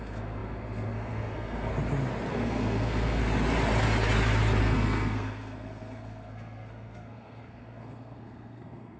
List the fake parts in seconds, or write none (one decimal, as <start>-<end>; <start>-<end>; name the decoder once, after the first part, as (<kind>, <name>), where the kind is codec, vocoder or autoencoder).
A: 0.0-1.7 (codec, SNAC); 2.3-3.2; 4.6-9.0